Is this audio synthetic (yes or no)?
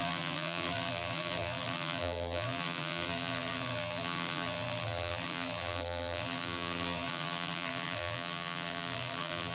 yes